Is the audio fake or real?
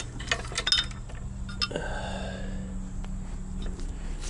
real